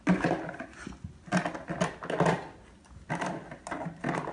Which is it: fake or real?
real